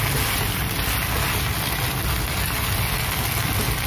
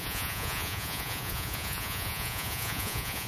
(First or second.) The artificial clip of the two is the second